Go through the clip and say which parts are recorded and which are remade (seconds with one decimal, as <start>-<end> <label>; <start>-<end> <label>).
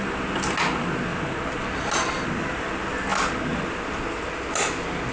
0.0-5.1 recorded